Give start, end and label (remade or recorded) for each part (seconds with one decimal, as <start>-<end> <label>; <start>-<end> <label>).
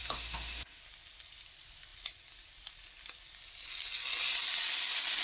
0.0-0.8 remade; 0.8-5.2 recorded